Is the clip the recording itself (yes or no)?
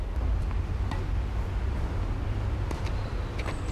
yes